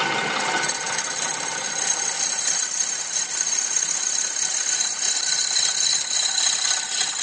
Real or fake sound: real